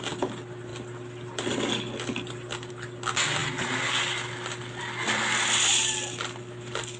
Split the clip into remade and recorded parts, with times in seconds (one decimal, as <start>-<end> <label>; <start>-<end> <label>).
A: 0.0-7.0 recorded